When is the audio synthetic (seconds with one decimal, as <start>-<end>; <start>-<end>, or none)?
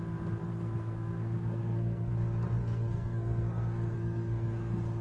0.4-2.1; 2.6-5.0